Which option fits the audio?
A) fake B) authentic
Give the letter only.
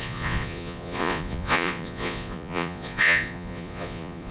A